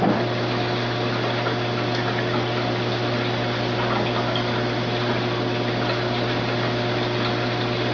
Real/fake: real